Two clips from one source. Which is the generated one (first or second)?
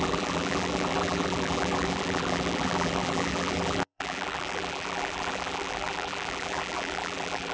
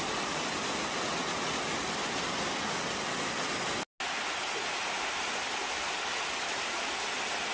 first